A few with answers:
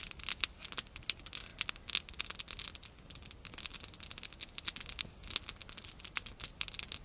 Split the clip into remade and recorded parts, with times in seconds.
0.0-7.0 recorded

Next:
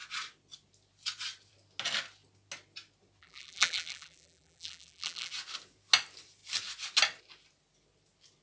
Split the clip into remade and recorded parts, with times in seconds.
0.0-3.2 recorded; 3.2-5.3 remade; 5.3-8.4 recorded

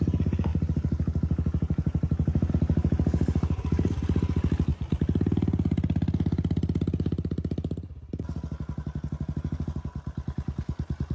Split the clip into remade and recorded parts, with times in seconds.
0.0-11.1 recorded

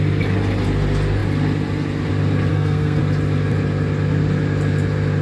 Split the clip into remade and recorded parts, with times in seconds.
0.0-2.5 recorded; 2.5-3.0 remade; 3.0-5.2 recorded

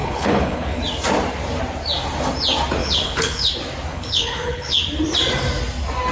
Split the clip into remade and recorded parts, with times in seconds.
0.0-0.8 remade; 0.8-2.8 recorded; 2.8-3.5 remade; 3.5-3.9 recorded; 3.9-4.8 remade; 4.8-6.1 recorded